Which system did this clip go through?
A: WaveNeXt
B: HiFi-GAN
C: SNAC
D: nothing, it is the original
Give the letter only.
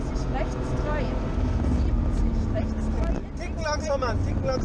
D